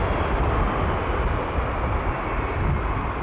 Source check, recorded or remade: recorded